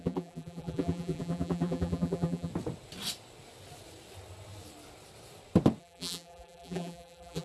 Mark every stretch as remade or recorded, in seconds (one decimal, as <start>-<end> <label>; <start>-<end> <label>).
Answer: 0.0-2.5 remade; 2.5-5.8 recorded; 5.8-7.4 remade